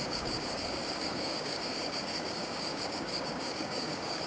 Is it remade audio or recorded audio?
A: remade